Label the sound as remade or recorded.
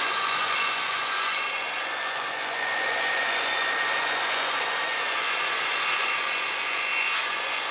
remade